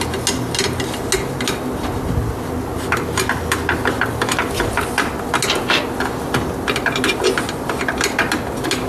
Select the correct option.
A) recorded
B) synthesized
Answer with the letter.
A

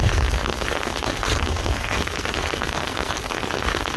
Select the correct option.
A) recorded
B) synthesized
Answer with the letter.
B